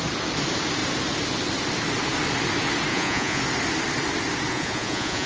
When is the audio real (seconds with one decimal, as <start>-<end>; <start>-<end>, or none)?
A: 0.0-2.9; 3.4-4.5

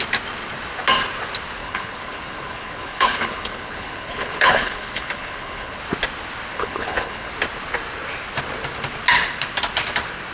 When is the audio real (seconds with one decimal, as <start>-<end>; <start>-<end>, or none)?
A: 0.0-1.6; 5.8-6.5; 7.3-10.3